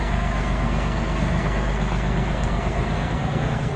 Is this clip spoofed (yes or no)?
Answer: yes